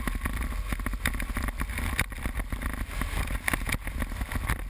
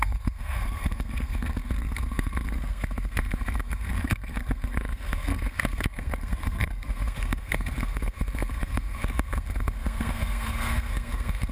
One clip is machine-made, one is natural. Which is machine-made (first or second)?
second